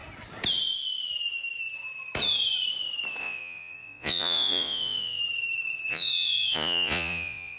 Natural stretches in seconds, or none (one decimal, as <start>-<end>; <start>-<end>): 0.0-3.2; 5.2-5.9